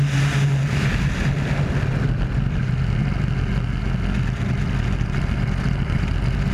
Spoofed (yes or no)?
no